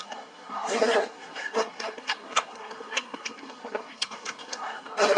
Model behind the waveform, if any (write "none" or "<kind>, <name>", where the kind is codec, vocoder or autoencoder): codec, SNAC